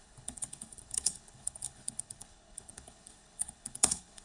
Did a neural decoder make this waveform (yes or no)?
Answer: yes